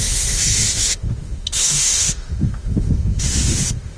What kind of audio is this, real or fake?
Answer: fake